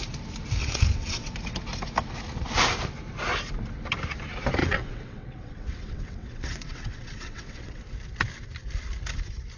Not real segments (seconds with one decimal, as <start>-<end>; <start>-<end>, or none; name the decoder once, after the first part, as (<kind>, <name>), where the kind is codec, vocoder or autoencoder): 0.6-1.3 (vocoder, WaveNeXt); 4.6-7.8